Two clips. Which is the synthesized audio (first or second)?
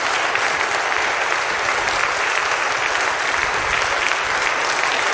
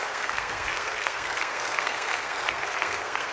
second